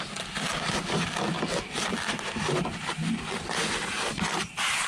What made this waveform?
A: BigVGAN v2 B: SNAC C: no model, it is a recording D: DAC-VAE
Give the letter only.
C